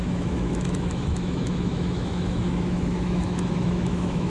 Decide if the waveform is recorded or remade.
remade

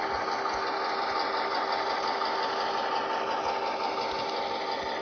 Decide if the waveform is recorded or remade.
recorded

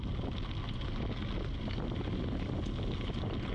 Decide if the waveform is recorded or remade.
recorded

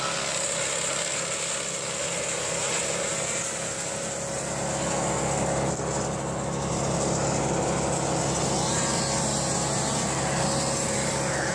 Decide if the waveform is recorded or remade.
recorded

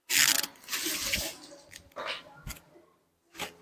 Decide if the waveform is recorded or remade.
recorded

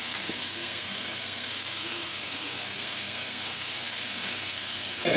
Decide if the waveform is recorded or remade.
remade